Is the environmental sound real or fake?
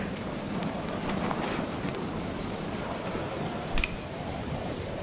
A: fake